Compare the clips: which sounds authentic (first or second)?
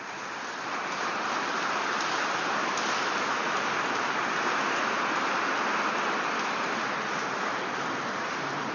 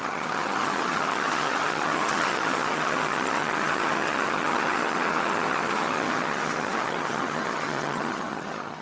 first